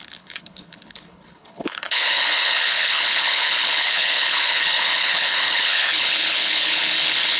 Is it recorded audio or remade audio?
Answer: remade